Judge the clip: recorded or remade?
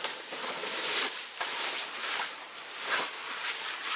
remade